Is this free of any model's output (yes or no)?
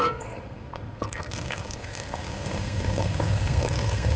no